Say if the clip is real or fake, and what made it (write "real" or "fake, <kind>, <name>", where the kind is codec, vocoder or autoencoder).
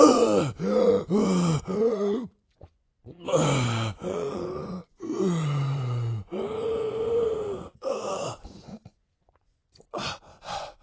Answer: fake, vocoder, Vocos